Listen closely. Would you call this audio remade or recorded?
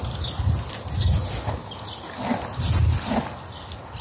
recorded